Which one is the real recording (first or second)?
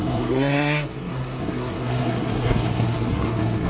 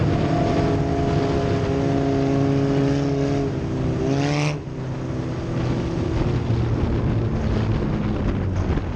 second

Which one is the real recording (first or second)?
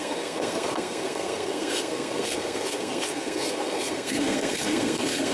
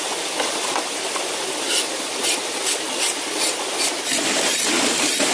second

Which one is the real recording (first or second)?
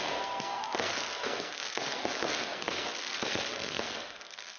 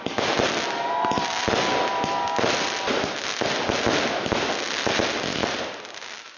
second